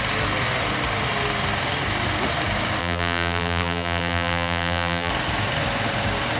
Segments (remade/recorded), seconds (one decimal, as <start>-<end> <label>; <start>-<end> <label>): 0.0-2.8 recorded; 2.8-5.1 remade; 5.1-6.4 recorded